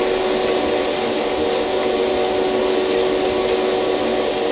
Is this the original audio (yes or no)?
yes